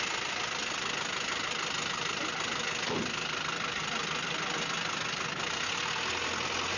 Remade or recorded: recorded